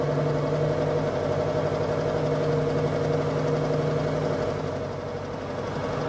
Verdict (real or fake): real